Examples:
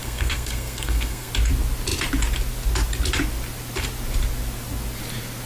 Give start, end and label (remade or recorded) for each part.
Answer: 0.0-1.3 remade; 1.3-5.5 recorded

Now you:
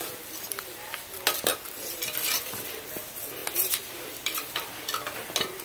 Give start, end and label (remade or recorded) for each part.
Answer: 0.0-1.5 recorded; 1.5-2.0 remade; 2.0-5.6 recorded

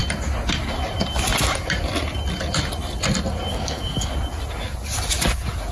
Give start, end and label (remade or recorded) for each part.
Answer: 0.0-3.5 recorded; 3.5-4.1 remade; 4.1-5.7 recorded

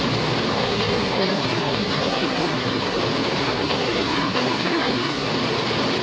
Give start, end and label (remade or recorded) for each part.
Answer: 0.0-0.5 recorded; 0.5-3.0 remade; 3.0-3.4 recorded; 3.4-5.3 remade; 5.3-6.0 recorded

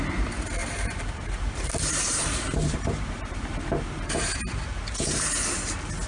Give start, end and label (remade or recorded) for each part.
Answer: 0.0-0.6 recorded; 0.6-4.3 remade; 4.3-6.1 recorded

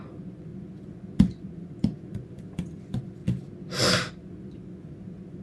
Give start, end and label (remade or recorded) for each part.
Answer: 0.0-3.2 remade; 3.2-4.1 recorded; 4.1-5.4 remade

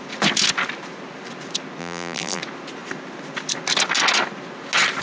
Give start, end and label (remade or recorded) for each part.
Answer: 0.0-1.8 recorded; 1.8-2.4 remade; 2.4-5.0 recorded